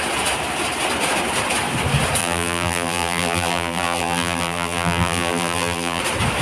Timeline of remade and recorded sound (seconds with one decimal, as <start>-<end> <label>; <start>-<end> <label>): 0.0-2.2 recorded; 2.2-6.0 remade; 6.0-6.4 recorded